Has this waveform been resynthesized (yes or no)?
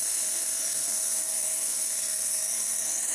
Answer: yes